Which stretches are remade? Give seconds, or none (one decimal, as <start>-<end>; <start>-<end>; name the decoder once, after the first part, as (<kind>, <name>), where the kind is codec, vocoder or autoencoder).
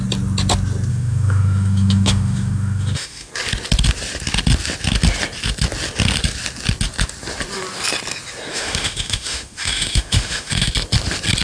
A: 0.9-3.3 (autoencoder, DAC-VAE); 8.5-10.7